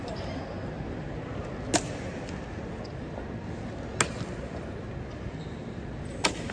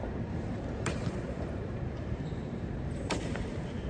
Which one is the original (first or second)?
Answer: first